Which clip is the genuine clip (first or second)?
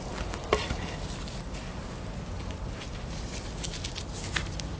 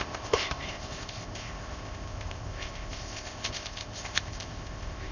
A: first